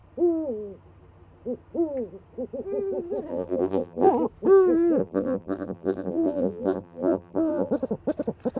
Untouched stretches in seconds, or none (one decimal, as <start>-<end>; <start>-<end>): 0.0-3.3; 4.1-5.0; 7.7-8.6